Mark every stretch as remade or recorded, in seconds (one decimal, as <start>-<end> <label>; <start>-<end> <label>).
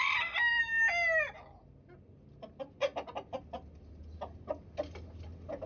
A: 0.0-5.7 recorded